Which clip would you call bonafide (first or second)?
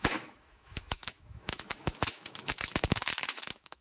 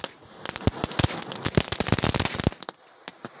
second